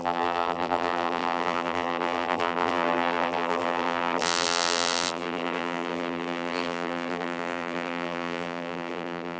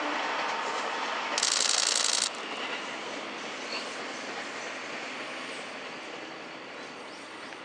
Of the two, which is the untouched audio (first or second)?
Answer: second